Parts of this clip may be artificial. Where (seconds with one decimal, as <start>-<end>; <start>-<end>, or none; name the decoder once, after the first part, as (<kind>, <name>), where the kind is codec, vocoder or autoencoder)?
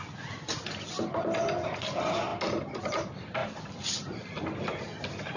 none